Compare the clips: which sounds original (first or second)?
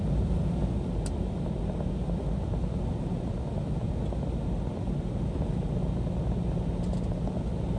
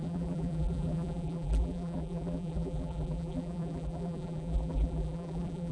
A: first